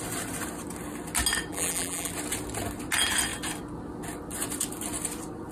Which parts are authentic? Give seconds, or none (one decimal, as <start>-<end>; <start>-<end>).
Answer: 0.0-1.5; 2.1-5.5

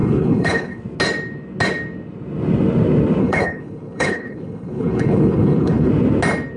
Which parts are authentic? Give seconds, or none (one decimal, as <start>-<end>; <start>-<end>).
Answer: 0.8-3.2; 5.9-6.6

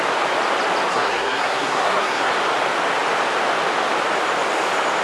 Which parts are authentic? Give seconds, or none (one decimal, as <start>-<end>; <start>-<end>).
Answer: 0.0-0.9; 2.3-5.0

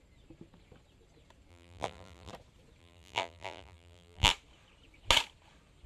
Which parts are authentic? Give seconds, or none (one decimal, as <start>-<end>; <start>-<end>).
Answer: 0.0-1.5; 2.3-2.8; 4.3-5.9

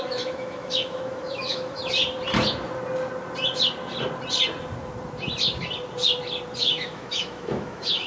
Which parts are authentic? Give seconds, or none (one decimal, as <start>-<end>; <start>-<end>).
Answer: 1.8-6.6

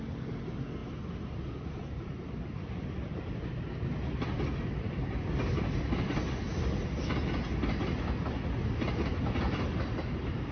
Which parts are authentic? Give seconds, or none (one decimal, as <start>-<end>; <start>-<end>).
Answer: 0.0-0.8; 3.5-10.5